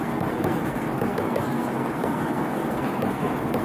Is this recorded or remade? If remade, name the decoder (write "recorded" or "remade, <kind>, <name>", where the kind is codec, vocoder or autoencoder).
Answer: remade, codec, SNAC